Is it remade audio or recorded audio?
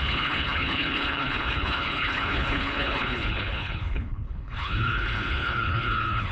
remade